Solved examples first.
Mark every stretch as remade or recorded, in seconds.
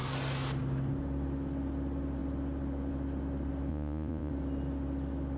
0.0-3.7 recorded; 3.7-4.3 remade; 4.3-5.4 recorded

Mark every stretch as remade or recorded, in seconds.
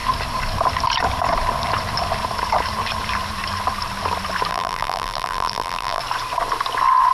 0.0-4.5 recorded; 4.5-6.0 remade; 6.0-7.1 recorded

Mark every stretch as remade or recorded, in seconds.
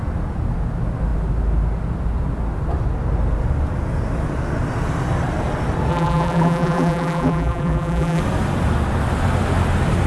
0.0-5.9 recorded; 5.9-8.2 remade; 8.2-10.1 recorded